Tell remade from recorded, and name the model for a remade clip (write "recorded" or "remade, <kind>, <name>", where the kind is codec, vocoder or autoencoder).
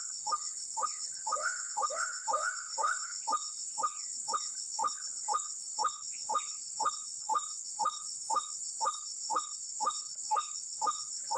remade, codec, HILCodec